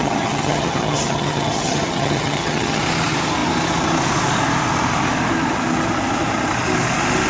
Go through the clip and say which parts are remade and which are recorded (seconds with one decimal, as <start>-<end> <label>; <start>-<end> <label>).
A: 0.0-2.8 remade; 2.8-7.3 recorded